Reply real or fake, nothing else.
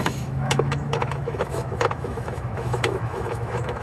fake